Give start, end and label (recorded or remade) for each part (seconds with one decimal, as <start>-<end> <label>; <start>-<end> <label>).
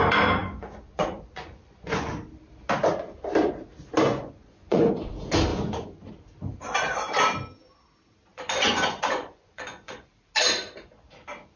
0.0-0.4 recorded; 0.4-2.1 remade; 2.1-4.1 recorded; 4.1-5.1 remade; 5.1-5.5 recorded; 5.5-6.1 remade; 6.1-8.3 recorded; 8.3-10.1 remade; 10.1-11.6 recorded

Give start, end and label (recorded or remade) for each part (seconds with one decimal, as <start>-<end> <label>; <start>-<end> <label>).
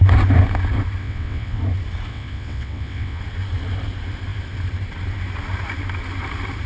0.0-1.0 recorded; 1.0-1.6 remade; 1.6-2.1 recorded; 2.1-3.2 remade; 3.2-6.7 recorded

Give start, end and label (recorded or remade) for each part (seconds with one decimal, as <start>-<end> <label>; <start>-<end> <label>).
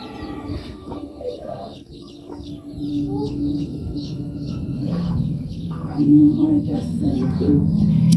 0.0-0.5 recorded; 0.5-2.5 remade; 2.5-2.9 recorded; 2.9-8.2 remade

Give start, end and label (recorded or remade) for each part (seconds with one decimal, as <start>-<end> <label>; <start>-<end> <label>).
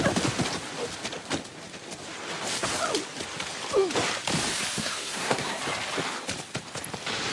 0.0-4.8 recorded; 4.8-5.6 remade; 5.6-7.3 recorded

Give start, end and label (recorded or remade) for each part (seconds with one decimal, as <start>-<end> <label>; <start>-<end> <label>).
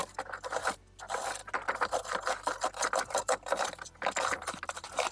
0.0-5.1 recorded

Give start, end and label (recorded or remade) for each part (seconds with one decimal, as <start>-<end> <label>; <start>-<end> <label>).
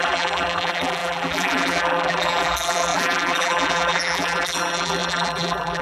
0.0-5.8 remade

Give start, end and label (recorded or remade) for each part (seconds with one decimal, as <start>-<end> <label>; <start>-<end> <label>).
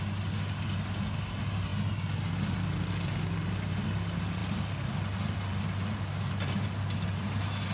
0.0-7.7 recorded